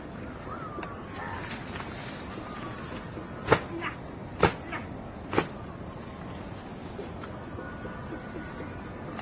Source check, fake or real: real